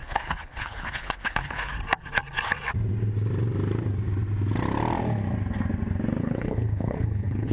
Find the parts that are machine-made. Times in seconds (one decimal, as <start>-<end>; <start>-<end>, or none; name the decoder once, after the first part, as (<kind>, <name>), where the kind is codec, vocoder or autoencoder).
0.0-1.7 (codec, HILCodec); 6.2-7.5

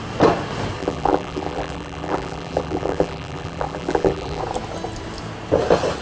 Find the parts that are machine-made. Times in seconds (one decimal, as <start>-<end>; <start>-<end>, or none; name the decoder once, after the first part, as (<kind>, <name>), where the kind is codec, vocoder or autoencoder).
0.8-4.4 (vocoder, BigVGAN v2)

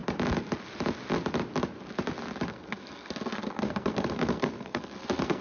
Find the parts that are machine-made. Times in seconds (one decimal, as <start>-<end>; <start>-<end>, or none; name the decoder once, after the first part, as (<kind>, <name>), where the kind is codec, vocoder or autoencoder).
2.5-5.4 (codec, SNAC)

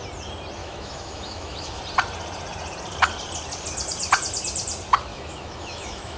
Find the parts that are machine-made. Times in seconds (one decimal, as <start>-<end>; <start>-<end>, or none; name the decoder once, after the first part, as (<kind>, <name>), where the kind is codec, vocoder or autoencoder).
0.6-1.8 (autoencoder, DAC-VAE); 5.1-6.2

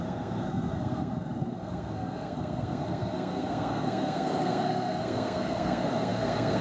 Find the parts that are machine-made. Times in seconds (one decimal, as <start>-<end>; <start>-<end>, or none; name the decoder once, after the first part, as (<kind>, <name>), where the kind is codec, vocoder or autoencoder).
0.0-6.6 (codec, SNAC)

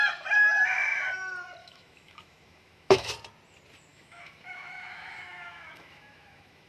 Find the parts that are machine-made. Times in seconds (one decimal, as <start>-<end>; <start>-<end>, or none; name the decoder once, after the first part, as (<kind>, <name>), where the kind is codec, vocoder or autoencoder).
1.6-3.1 (autoencoder, DAC-VAE); 3.9-6.7

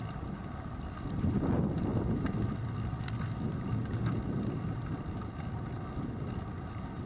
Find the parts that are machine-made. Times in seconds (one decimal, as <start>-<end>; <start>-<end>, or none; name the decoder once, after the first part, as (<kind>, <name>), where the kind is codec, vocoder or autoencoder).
none